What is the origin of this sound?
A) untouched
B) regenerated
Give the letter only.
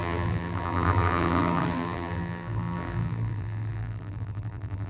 B